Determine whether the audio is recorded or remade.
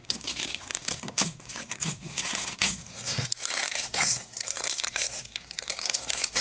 remade